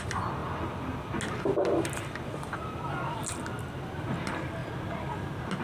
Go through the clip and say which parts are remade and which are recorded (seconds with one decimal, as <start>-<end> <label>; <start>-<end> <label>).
0.0-5.6 recorded